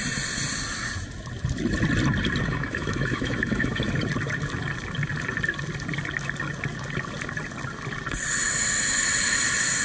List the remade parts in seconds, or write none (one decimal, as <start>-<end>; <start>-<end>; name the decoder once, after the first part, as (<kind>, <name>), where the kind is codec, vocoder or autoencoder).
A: 2.4-3.9 (autoencoder, DAC-VAE)